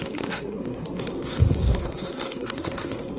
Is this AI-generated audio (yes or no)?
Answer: yes